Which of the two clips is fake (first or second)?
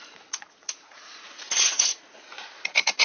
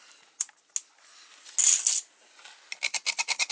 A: first